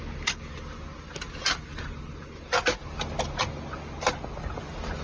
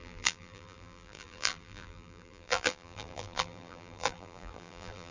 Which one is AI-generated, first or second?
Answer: second